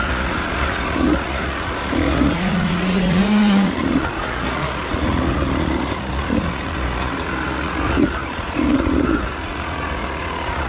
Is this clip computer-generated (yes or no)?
yes